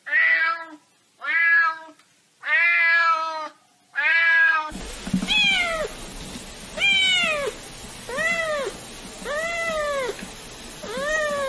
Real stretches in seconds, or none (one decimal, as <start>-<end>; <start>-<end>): 0.0-4.1; 4.8-11.5